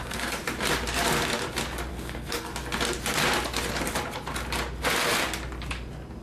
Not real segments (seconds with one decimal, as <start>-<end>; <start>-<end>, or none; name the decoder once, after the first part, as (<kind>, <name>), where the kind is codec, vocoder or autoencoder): 0.0-0.4 (codec, SNAC); 1.9-2.5